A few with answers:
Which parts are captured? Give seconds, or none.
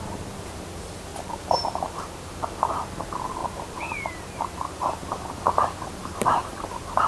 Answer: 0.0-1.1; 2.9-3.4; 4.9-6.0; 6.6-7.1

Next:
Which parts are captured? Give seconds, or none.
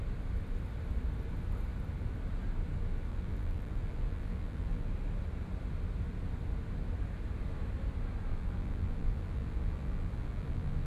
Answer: 0.0-3.1; 4.9-8.3